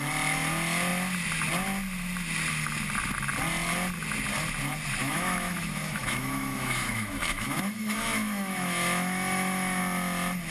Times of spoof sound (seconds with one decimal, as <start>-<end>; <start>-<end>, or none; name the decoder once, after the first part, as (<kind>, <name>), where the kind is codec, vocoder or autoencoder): 5.0-9.8 (autoencoder, DAC-VAE)